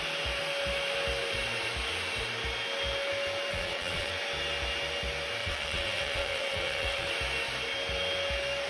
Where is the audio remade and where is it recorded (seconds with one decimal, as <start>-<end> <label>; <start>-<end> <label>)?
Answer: 0.0-3.5 recorded; 3.5-4.1 remade; 4.1-5.4 recorded; 5.4-7.1 remade; 7.1-8.7 recorded